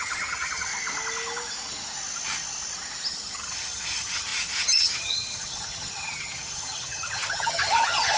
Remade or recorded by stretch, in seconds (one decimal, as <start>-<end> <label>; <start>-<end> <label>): 0.0-0.7 remade; 0.7-3.1 recorded; 3.1-8.2 remade